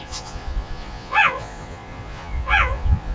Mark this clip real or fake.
fake